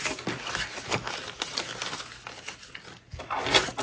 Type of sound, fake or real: real